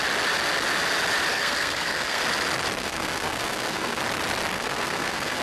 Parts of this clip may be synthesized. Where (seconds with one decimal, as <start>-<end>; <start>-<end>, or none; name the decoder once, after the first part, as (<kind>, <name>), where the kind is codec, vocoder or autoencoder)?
1.3-2.2 (codec, SNAC); 2.8-4.0; 4.5-5.4